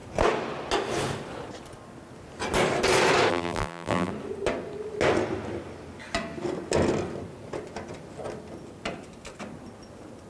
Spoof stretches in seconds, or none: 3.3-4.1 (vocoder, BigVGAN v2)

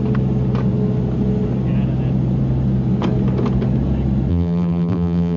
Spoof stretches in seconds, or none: 4.3-5.4 (vocoder, BigVGAN v2)

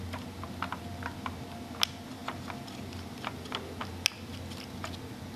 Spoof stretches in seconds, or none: none

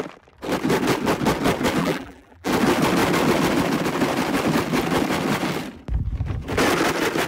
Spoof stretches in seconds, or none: 1.8-2.5 (vocoder, BigVGAN v2)

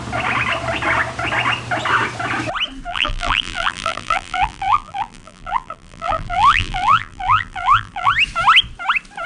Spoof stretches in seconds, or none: 2.9-8.1 (vocoder, BigVGAN v2)

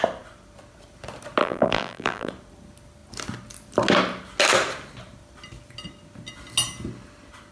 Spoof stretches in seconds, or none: 1.4-2.3 (vocoder, BigVGAN v2)